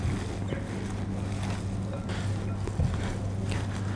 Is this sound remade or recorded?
recorded